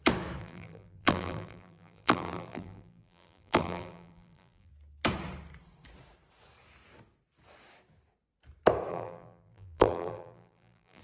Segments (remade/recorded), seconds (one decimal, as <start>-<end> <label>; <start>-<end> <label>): 0.0-0.4 recorded; 0.4-4.7 remade; 4.7-8.9 recorded; 8.9-11.0 remade